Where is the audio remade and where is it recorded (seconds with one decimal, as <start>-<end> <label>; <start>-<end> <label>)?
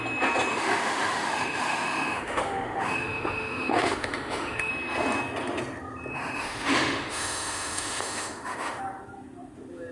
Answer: 0.0-0.5 recorded; 0.5-4.7 remade; 4.7-6.1 recorded; 6.1-8.8 remade; 8.8-9.9 recorded